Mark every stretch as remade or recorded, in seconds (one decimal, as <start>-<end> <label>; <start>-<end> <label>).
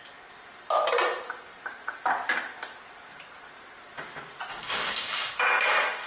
0.0-4.5 recorded; 4.5-5.4 remade; 5.4-6.1 recorded